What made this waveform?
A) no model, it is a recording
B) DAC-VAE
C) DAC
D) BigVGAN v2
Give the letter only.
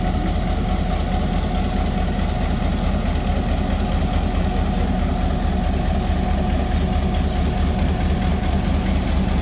A